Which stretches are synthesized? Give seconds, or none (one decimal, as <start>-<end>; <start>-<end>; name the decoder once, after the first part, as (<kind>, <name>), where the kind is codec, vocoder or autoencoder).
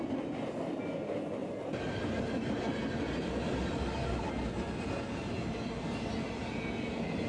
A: none